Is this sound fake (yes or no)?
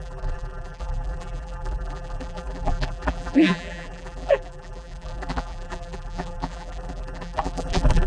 yes